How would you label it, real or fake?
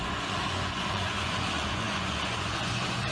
fake